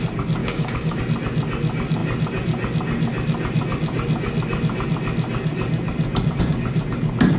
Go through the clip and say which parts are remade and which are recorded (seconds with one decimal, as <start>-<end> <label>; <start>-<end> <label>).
0.0-0.4 recorded; 0.4-1.0 remade; 1.0-7.4 recorded